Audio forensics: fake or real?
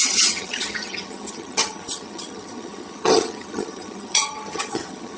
fake